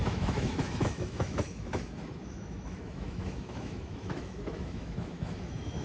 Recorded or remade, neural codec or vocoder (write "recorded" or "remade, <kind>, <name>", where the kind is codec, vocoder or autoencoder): remade, autoencoder, DAC-VAE